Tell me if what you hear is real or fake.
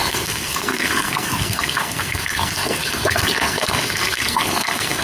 fake